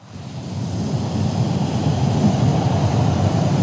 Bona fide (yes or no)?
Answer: yes